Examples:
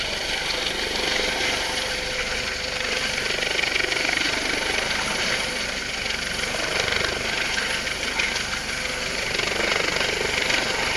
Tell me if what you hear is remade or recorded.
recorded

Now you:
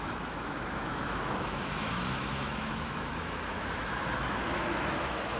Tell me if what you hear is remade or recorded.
remade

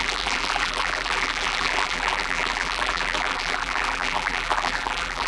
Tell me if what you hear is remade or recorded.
remade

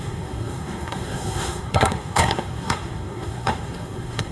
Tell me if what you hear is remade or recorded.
remade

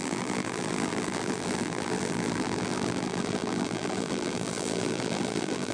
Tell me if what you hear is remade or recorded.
remade